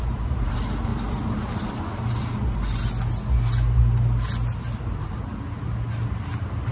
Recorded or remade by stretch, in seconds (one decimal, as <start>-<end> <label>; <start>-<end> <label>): 0.0-0.9 remade; 0.9-4.8 recorded; 4.8-5.3 remade; 5.3-6.7 recorded